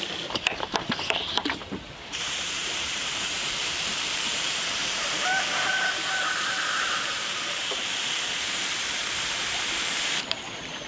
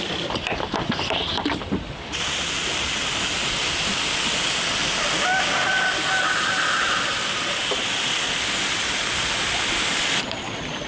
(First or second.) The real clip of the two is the second